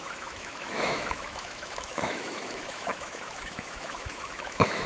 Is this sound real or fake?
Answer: fake